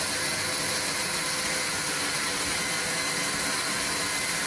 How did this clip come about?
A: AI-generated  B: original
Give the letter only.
B